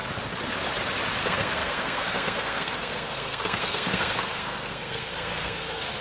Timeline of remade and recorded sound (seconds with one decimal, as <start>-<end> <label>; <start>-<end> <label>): 0.0-1.2 recorded; 1.2-6.0 remade